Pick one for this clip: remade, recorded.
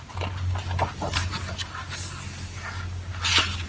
recorded